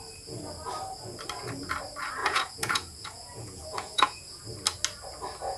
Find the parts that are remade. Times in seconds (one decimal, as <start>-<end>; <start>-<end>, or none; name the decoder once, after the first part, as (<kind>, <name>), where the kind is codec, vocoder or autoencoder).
2.2-4.4 (vocoder, Vocos)